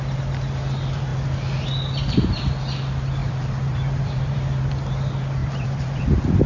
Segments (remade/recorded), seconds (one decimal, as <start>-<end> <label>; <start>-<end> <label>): 0.0-3.2 recorded; 3.2-4.7 remade; 4.7-5.4 recorded; 5.4-6.0 remade; 6.0-6.5 recorded